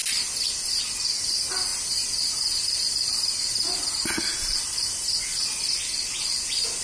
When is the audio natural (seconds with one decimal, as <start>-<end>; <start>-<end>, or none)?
0.0-6.8